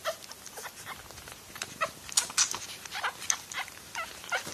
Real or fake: real